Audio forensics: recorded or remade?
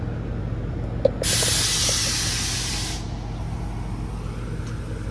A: recorded